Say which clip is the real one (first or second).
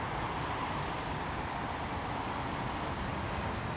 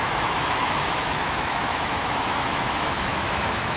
first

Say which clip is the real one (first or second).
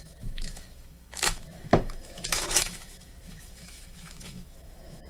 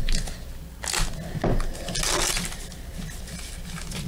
second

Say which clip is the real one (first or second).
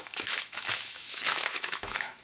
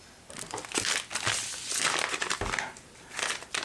second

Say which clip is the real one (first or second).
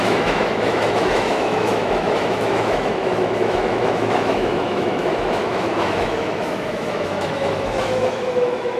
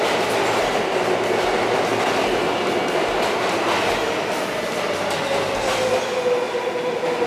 second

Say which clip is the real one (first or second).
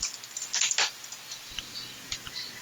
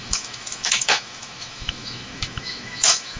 first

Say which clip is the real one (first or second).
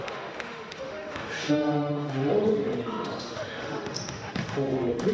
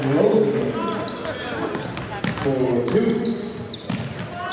second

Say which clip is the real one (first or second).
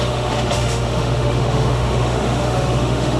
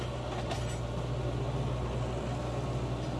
second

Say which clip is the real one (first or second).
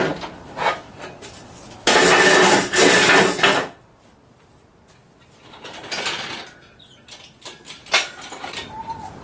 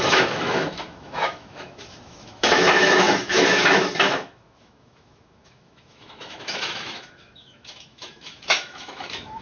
first